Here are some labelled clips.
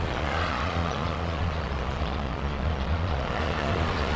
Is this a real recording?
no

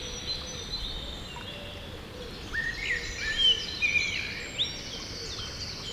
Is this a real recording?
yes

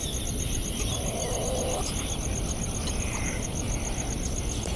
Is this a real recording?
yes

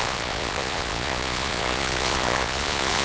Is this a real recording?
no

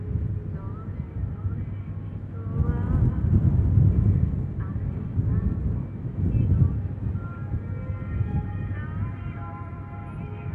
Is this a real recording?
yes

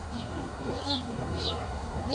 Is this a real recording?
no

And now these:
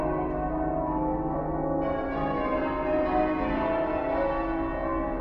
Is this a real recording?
yes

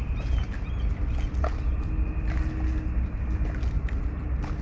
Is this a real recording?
yes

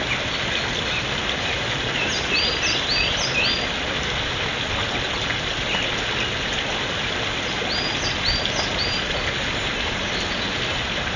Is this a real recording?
yes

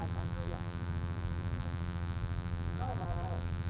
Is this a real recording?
no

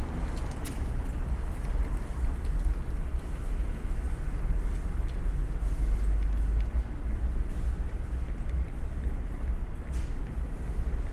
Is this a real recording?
yes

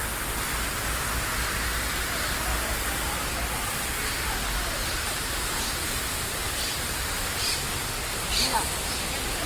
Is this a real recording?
yes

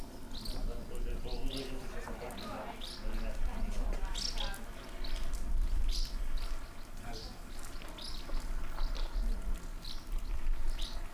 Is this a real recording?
yes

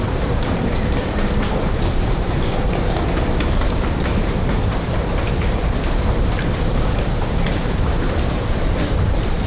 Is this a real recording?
no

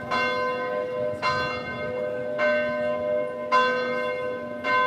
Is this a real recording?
yes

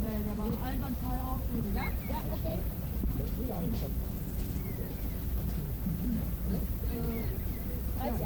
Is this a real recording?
no